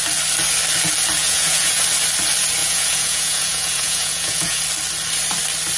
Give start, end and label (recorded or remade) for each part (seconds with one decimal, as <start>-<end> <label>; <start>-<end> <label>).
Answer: 0.0-1.2 recorded; 1.2-1.8 remade; 1.8-2.6 recorded; 2.6-4.6 remade; 4.6-5.8 recorded